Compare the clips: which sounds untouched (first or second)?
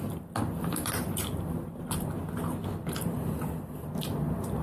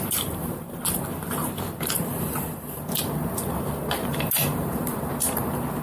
first